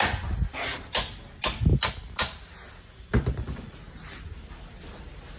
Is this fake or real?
real